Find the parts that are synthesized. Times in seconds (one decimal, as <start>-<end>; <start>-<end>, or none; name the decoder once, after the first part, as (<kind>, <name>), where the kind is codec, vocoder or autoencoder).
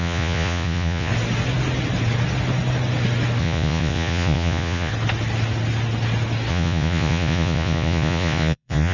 0.0-1.1 (vocoder, Vocos); 3.4-4.9; 6.5-8.9